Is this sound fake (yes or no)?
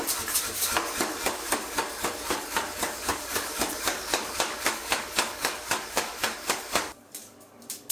yes